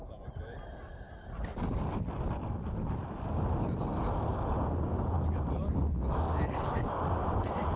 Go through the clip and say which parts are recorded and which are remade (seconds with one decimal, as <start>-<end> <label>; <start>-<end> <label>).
0.0-1.0 remade; 1.0-4.3 recorded; 4.3-5.7 remade; 5.7-7.8 recorded